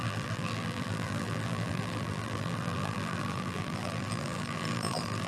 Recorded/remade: remade